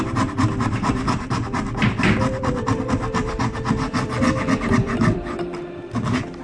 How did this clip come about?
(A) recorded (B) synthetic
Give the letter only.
B